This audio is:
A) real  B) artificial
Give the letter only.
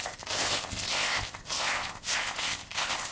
B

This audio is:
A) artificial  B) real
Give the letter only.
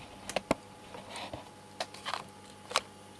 B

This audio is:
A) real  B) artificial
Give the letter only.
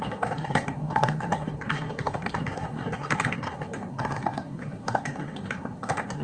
B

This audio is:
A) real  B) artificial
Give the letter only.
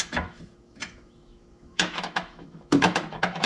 B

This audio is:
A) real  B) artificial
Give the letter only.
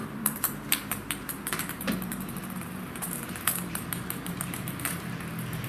B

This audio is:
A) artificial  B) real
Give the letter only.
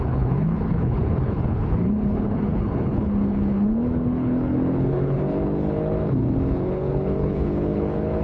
A